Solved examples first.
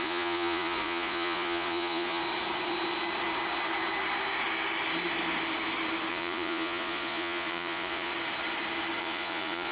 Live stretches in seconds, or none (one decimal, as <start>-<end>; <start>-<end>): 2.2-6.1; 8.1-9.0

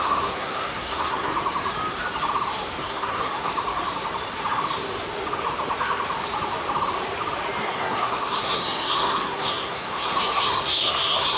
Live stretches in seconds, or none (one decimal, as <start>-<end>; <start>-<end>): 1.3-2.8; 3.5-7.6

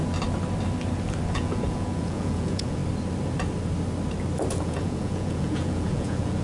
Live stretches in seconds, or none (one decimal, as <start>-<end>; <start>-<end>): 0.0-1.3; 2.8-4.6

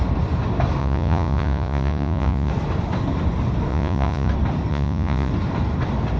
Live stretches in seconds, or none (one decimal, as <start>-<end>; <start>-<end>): 0.0-0.8; 2.5-3.7; 4.3-4.7; 5.3-6.2

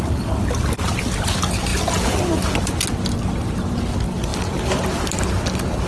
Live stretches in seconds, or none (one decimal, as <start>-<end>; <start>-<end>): 0.0-5.9

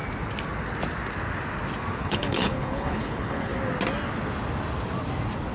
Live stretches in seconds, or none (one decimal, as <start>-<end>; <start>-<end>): 0.0-2.0; 3.5-5.5

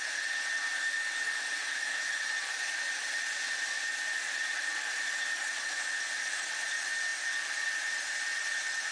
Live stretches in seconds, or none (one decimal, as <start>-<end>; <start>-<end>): 0.0-8.9